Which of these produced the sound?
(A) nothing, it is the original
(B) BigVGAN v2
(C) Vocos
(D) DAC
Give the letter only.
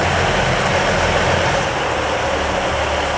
A